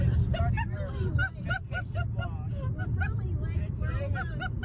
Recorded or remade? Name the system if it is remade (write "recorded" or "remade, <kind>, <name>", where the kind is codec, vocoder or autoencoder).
recorded